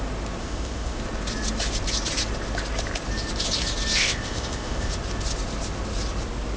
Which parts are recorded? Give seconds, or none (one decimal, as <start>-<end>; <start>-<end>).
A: 0.0-0.4; 1.0-4.0; 4.9-6.6